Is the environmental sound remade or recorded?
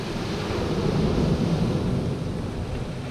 remade